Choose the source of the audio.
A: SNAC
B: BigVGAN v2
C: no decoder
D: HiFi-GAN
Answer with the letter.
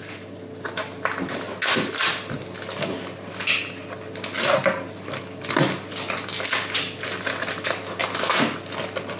C